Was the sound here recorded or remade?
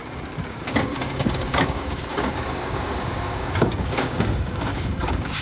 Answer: remade